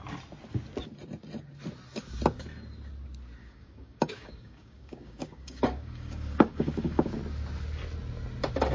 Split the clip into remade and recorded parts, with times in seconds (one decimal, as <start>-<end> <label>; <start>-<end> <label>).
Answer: 0.0-3.4 recorded; 3.4-7.1 remade; 7.1-8.7 recorded